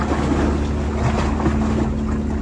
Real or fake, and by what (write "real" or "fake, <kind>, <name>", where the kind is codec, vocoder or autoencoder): real